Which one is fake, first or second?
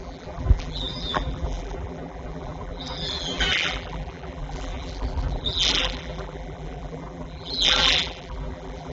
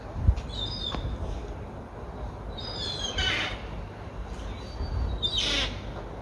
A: first